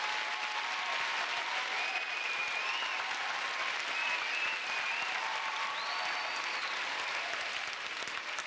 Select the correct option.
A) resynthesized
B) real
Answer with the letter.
B